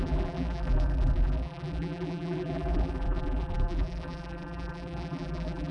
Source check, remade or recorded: remade